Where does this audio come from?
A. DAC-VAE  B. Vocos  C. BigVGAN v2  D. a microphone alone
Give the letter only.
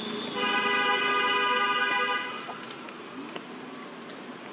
D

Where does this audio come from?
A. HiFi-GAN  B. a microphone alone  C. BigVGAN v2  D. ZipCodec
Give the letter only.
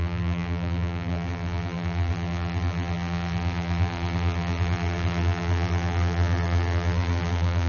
C